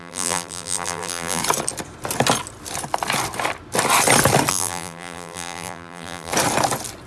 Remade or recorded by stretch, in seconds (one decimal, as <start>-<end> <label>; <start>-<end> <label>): 0.0-1.4 remade; 1.4-4.5 recorded; 4.5-6.3 remade; 6.3-7.1 recorded